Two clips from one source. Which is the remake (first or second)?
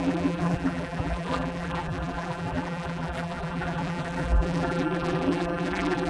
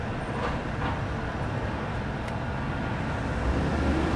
first